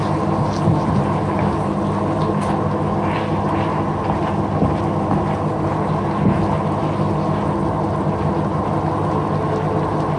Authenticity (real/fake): real